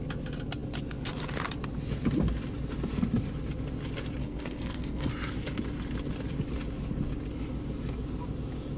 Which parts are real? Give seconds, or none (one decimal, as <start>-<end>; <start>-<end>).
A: 0.0-4.2; 5.1-8.8